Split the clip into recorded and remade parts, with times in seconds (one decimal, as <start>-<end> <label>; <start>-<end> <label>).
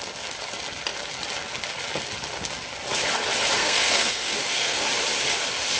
0.0-3.6 recorded; 3.6-4.9 remade; 4.9-5.8 recorded